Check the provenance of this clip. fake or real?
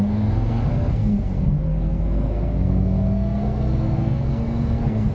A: fake